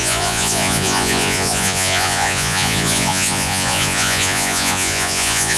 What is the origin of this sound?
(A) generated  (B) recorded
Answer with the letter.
A